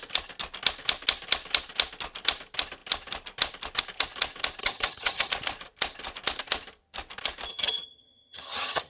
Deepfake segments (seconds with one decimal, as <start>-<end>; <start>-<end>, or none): 4.6-5.3; 7.5-8.9